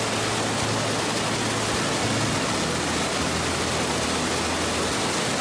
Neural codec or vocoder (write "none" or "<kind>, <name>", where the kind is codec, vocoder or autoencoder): none